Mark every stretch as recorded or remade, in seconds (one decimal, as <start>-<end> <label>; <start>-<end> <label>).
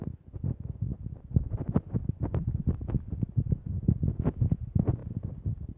0.0-3.5 recorded; 3.5-5.0 remade; 5.0-5.8 recorded